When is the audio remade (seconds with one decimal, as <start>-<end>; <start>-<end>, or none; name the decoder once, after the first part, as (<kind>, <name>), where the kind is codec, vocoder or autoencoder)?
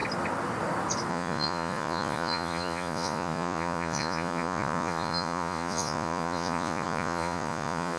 1.1-8.0 (vocoder, Vocos)